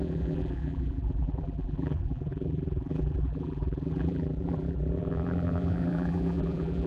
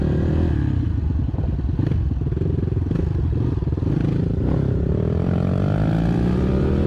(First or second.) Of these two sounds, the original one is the second